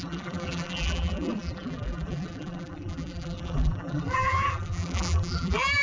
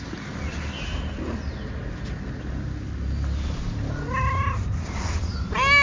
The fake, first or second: first